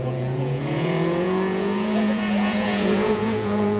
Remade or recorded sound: remade